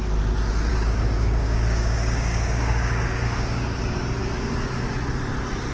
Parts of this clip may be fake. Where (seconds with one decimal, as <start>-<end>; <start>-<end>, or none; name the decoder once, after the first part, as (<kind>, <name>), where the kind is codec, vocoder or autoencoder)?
0.7-3.7 (codec, DAC)